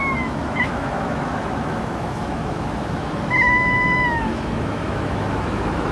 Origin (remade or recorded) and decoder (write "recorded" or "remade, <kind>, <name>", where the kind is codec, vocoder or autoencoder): remade, autoencoder, DAC-VAE